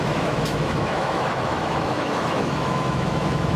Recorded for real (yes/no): no